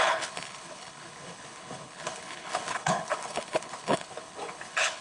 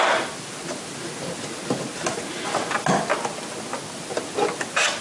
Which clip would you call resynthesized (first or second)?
first